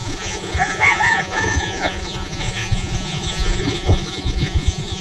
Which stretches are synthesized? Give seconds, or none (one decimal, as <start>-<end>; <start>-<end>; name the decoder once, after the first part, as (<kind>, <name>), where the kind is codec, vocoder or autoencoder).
0.0-5.0 (vocoder, Vocos)

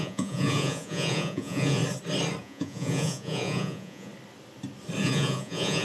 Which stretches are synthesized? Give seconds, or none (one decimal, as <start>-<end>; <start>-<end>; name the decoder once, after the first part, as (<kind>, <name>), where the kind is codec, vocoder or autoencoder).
0.0-1.8 (vocoder, Vocos); 2.4-4.1; 5.0-5.8

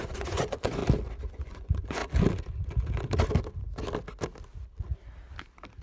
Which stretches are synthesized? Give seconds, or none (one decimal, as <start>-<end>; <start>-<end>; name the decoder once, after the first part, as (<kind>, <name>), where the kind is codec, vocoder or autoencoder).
0.0-0.8 (vocoder, Vocos); 1.3-2.0

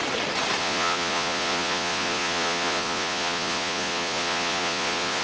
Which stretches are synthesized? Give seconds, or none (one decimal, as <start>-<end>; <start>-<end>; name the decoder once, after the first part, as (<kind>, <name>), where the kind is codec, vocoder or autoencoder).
0.6-5.2 (vocoder, Vocos)